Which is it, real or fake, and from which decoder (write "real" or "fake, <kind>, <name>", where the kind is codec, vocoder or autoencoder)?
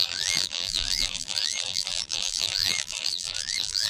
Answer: fake, vocoder, BigVGAN v2